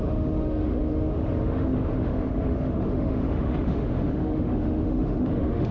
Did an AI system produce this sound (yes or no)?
yes